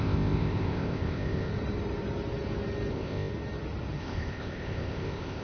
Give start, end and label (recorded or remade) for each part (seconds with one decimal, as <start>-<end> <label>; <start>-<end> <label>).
0.0-1.5 remade; 1.5-2.9 recorded; 2.9-3.3 remade; 3.3-4.0 recorded; 4.0-5.4 remade